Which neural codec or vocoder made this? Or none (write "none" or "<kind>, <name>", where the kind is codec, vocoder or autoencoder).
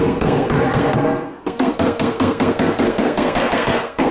codec, SNAC